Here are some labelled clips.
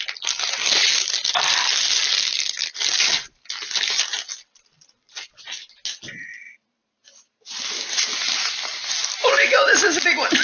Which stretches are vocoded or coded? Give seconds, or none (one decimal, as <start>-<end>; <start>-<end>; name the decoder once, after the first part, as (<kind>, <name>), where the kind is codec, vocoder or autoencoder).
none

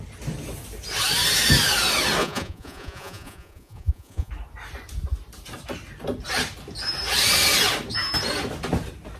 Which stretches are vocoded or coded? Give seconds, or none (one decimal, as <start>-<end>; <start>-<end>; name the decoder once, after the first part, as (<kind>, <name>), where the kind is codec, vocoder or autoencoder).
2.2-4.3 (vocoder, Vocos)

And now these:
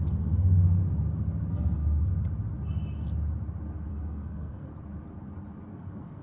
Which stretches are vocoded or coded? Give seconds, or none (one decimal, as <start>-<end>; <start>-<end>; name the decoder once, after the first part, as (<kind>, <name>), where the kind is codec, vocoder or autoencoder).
0.0-0.8 (codec, SNAC); 1.5-2.1; 3.9-4.7; 5.7-6.2

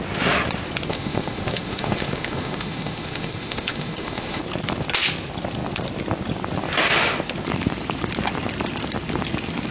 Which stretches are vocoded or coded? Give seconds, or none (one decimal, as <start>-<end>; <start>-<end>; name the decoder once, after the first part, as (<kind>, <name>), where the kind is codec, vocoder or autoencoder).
0.9-4.4 (autoencoder, DAC-VAE)